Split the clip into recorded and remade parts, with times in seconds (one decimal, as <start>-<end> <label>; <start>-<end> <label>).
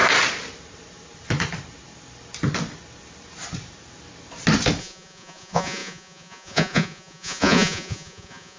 0.0-4.8 recorded; 4.8-8.6 remade